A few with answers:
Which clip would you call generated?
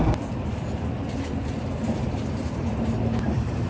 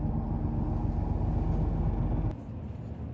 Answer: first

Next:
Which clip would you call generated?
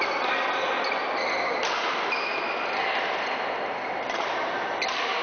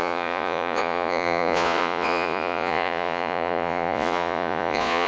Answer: second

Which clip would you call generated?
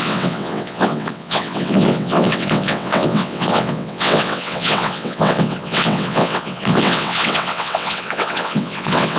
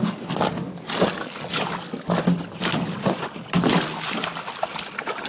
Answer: first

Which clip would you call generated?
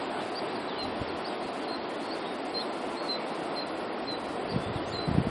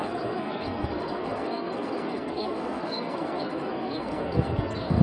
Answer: second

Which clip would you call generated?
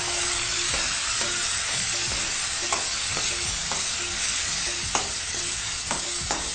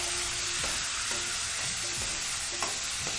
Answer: first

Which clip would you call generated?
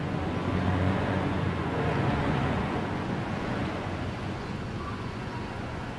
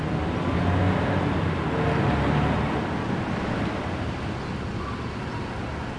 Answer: first